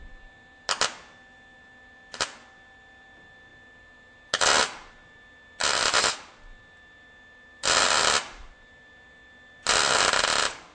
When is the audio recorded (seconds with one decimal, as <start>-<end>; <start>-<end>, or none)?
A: 0.0-10.7